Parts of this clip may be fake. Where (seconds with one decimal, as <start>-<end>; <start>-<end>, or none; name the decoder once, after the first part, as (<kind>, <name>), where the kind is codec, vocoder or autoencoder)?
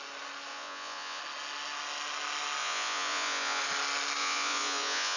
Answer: 0.5-1.2 (vocoder, Vocos); 2.6-3.6; 4.2-5.2